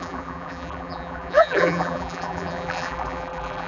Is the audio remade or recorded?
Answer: remade